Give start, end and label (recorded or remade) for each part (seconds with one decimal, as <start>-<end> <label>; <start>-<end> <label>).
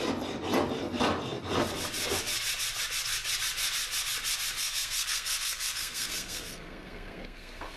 0.0-4.6 recorded; 4.6-7.8 remade